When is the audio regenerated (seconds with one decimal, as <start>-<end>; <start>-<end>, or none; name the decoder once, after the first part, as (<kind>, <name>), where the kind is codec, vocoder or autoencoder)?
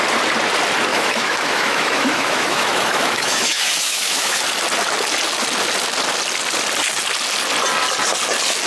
0.9-4.4 (autoencoder, DAC-VAE)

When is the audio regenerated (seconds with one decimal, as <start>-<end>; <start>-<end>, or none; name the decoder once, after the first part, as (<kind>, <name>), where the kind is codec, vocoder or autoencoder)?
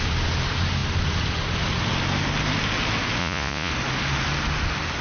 3.2-3.7 (vocoder, Vocos)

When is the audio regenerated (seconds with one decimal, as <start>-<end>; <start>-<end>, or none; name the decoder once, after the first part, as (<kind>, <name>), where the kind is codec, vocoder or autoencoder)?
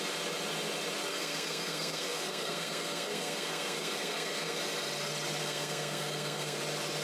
1.1-4.6 (codec, SNAC); 5.4-6.6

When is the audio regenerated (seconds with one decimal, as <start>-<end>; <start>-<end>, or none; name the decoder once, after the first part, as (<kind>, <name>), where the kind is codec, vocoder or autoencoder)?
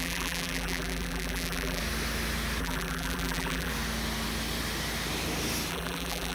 0.0-1.8 (vocoder, BigVGAN v2); 2.6-3.7; 5.7-6.3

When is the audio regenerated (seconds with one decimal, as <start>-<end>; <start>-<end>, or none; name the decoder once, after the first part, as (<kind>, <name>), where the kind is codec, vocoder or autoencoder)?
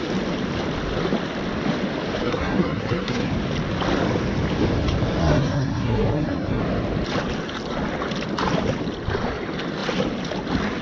2.2-3.3 (codec, SNAC); 5.2-6.6